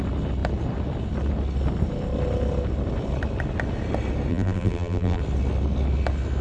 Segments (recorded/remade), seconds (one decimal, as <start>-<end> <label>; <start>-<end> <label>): 0.0-4.3 recorded; 4.3-5.2 remade; 5.2-6.4 recorded